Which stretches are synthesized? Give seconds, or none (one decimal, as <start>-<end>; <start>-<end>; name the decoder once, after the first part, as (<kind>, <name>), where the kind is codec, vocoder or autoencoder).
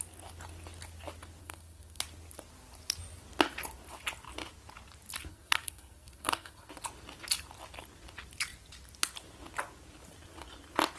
1.4-2.0 (codec, SNAC); 5.3-6.7